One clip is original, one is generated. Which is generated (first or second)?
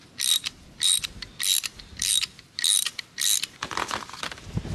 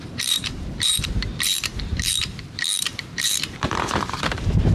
second